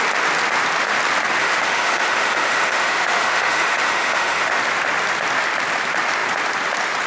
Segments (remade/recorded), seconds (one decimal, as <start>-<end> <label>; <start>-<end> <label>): 0.0-1.4 recorded; 1.4-4.6 remade; 4.6-7.1 recorded

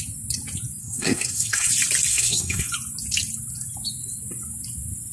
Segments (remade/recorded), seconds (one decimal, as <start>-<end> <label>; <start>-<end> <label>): 0.0-0.8 recorded; 0.8-1.7 remade; 1.7-2.1 recorded; 2.1-2.7 remade; 2.7-5.1 recorded

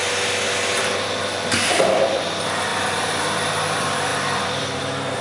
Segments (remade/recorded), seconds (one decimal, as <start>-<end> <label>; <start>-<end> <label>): 0.0-1.2 recorded; 1.2-5.2 remade

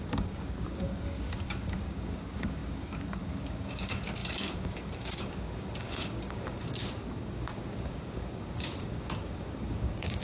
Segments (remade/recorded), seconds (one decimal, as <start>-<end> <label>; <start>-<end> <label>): 0.0-10.2 remade

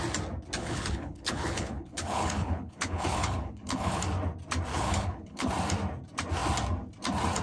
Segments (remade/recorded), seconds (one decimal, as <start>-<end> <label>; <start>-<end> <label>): 0.0-0.6 recorded; 0.6-4.0 remade; 4.0-4.7 recorded; 4.7-5.5 remade; 5.5-7.4 recorded

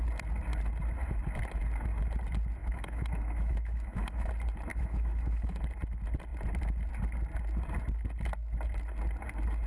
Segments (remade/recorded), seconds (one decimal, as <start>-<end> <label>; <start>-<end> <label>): 0.0-2.6 recorded; 2.6-4.3 remade; 4.3-4.7 recorded; 4.7-5.6 remade; 5.6-9.7 recorded